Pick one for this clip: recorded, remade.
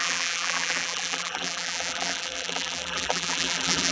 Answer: remade